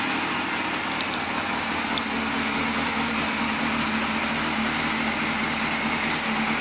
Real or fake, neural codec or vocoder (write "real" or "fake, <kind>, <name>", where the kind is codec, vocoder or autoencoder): real